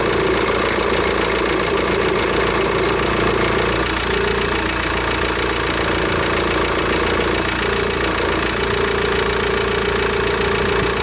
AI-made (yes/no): no